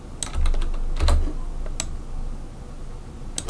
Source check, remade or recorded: recorded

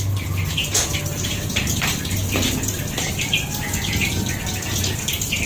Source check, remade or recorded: remade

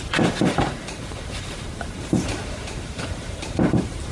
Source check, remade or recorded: remade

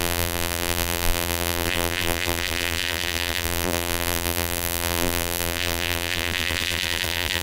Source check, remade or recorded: remade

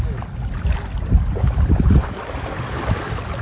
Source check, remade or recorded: recorded